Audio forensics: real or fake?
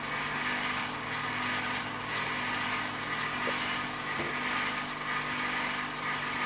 real